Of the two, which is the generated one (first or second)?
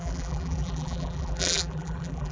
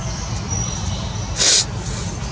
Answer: first